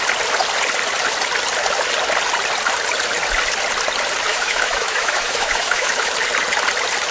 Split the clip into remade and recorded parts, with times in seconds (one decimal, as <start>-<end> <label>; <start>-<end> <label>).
0.0-4.3 recorded; 4.3-6.1 remade; 6.1-7.1 recorded